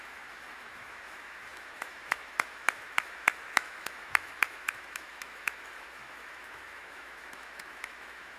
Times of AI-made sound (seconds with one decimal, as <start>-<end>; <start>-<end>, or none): 0.0-8.4